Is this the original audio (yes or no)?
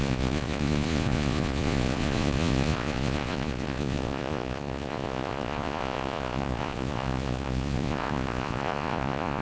no